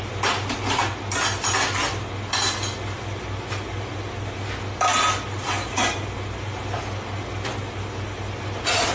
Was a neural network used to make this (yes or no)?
no